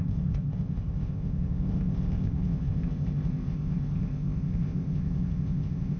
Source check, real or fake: fake